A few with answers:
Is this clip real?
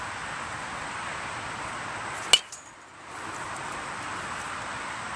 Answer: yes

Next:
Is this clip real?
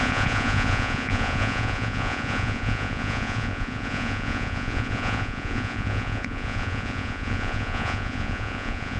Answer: no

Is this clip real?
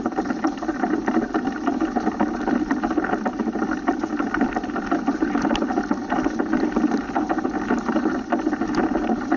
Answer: yes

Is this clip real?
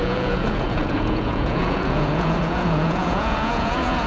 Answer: no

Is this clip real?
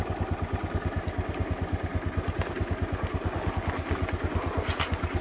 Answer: yes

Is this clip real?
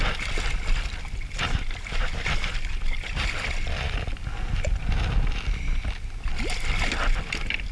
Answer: yes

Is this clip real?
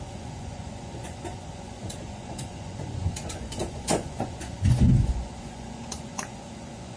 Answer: no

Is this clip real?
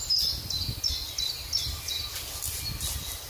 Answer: yes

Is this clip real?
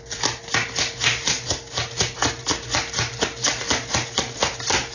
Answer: yes